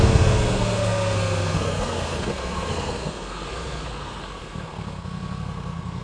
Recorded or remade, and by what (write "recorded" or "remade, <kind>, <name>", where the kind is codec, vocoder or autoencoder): remade, codec, SNAC